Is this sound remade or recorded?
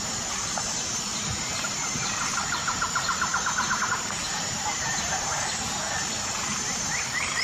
remade